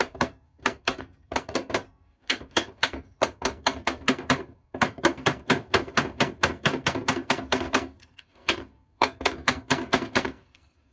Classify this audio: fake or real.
fake